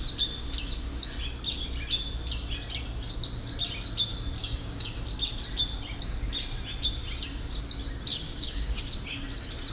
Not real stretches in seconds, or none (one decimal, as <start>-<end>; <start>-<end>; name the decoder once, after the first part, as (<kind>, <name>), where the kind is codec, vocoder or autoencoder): 4.4-5.0 (codec, DAC); 8.1-8.8